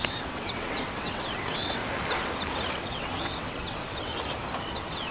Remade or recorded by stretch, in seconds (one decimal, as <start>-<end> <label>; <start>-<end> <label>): 0.0-1.8 remade; 1.8-2.8 recorded; 2.8-4.1 remade; 4.1-4.6 recorded; 4.6-5.1 remade

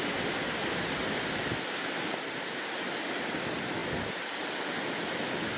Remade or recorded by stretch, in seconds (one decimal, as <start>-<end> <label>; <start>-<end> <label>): 0.0-5.6 recorded

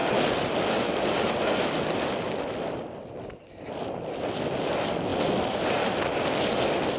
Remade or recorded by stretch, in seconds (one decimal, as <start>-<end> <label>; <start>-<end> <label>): 0.0-7.0 recorded

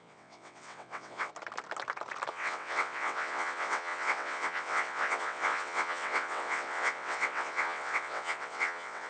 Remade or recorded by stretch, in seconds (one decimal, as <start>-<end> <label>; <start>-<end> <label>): 0.0-1.3 remade; 1.3-2.3 recorded; 2.3-9.1 remade

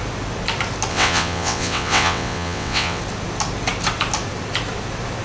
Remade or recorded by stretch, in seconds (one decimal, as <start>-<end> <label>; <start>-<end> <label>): 0.0-0.9 recorded; 0.9-3.0 remade; 3.0-5.2 recorded

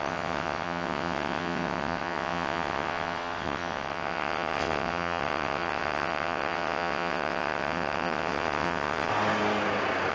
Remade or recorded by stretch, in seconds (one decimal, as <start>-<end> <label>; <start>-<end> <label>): 0.0-9.1 remade; 9.1-10.1 recorded

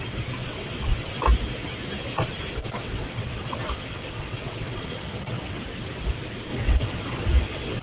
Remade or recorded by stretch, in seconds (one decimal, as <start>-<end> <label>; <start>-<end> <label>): 0.0-0.4 recorded; 0.4-1.1 remade; 1.1-2.6 recorded; 2.6-5.6 remade; 5.6-6.5 recorded; 6.5-7.8 remade